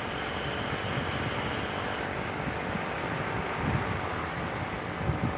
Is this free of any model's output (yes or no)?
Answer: yes